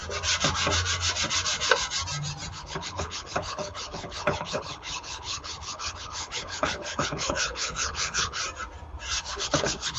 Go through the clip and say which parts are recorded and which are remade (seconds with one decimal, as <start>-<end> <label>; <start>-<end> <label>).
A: 0.0-2.5 recorded; 2.5-8.4 remade; 8.4-9.2 recorded; 9.2-10.0 remade